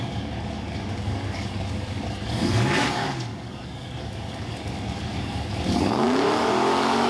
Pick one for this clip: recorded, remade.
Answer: remade